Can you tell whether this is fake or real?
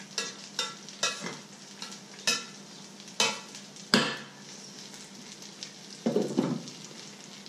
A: real